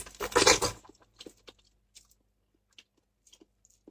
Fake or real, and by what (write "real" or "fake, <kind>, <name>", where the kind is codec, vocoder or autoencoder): real